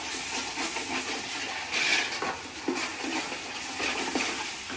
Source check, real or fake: real